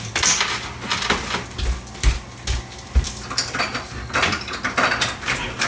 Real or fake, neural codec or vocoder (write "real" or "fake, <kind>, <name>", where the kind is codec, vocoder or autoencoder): real